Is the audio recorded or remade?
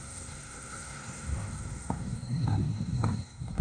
remade